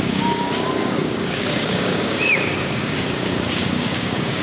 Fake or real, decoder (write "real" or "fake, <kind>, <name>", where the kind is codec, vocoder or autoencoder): fake, codec, DAC